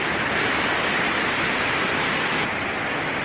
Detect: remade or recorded remade